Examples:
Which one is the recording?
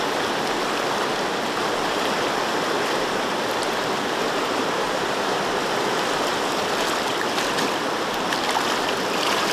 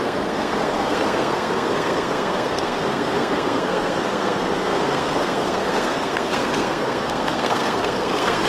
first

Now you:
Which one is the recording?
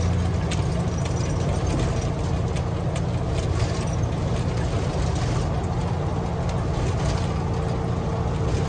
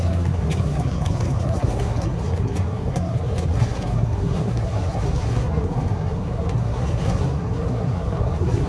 first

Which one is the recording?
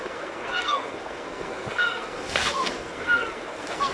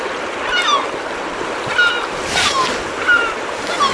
second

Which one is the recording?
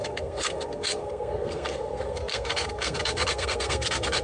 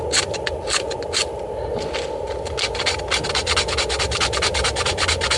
second